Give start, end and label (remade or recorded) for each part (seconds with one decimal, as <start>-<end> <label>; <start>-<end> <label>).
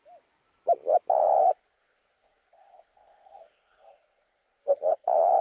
0.0-1.4 recorded; 1.4-5.4 remade